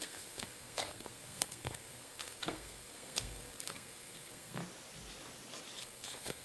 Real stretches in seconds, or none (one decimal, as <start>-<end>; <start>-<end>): 4.6-5.8